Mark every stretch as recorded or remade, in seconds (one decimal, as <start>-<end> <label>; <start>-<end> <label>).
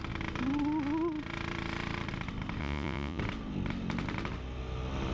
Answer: 0.0-2.6 recorded; 2.6-3.2 remade; 3.2-5.1 recorded